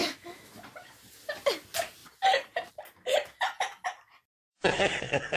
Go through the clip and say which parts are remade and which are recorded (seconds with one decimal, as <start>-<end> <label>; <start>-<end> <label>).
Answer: 0.0-0.6 remade; 0.6-5.4 recorded